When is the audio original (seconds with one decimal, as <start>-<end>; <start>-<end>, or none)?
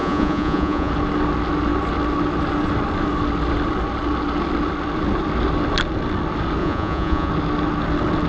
0.9-6.6; 7.3-8.3